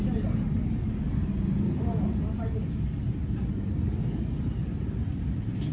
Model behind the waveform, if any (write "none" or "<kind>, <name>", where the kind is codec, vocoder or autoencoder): none